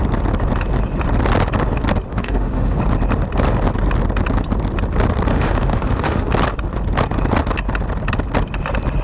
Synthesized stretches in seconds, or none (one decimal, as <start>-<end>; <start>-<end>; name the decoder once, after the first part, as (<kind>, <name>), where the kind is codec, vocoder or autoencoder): 2.1-2.8 (autoencoder, DAC-VAE); 5.3-6.3